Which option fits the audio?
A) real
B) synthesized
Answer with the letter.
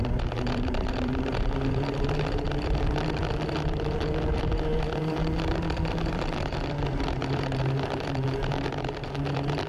B